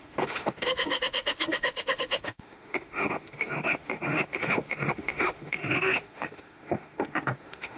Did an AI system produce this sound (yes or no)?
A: yes